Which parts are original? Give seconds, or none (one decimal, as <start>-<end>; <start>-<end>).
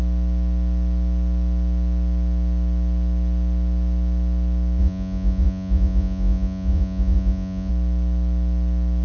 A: 0.0-4.8; 7.7-9.0